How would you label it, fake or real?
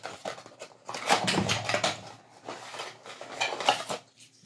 real